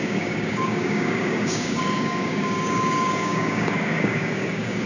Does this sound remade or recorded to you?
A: remade